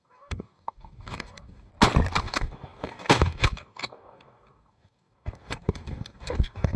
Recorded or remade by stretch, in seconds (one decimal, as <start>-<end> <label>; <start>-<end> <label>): 0.0-1.7 remade; 1.7-2.2 recorded; 2.2-6.8 remade